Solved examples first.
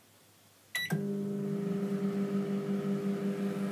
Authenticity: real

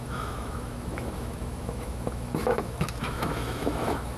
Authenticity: fake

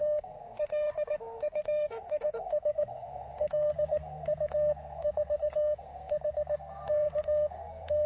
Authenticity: fake